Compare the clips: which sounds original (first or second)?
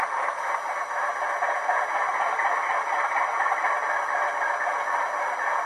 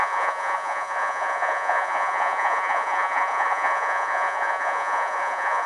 first